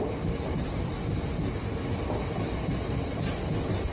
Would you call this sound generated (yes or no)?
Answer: no